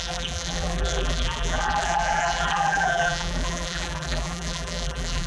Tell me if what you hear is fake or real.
fake